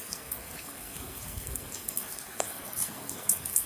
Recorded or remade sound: remade